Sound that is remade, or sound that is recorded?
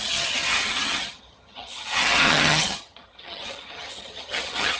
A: remade